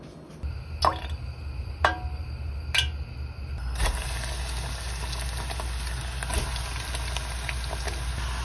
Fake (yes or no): no